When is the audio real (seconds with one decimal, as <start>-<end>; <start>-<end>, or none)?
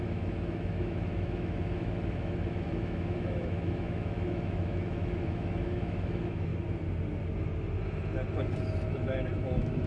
6.5-8.9